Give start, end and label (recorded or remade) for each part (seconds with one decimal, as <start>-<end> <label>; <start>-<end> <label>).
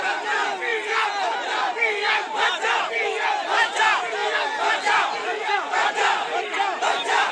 0.0-5.2 recorded; 5.2-5.9 remade; 5.9-7.3 recorded